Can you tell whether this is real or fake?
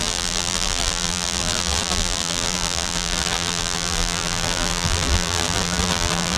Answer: fake